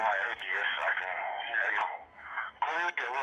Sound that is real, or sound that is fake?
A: fake